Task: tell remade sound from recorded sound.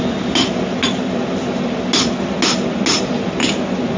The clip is recorded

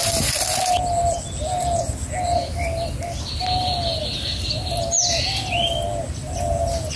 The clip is recorded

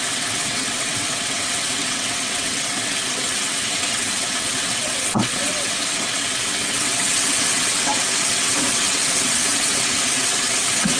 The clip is remade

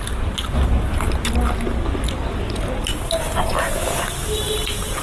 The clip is recorded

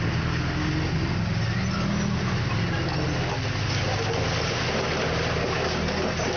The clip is recorded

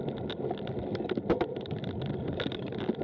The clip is recorded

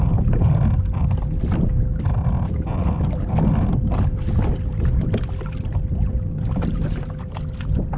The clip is recorded